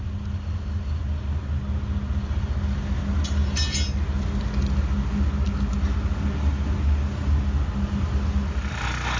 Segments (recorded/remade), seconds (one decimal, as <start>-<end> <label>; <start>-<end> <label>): 0.0-9.2 recorded